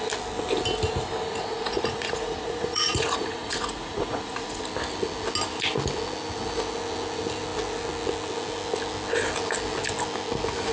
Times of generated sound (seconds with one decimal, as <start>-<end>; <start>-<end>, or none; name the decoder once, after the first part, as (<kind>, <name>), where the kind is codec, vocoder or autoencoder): 1.3-4.6 (vocoder, Vocos)